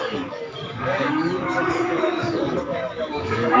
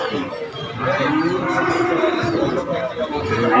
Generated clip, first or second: first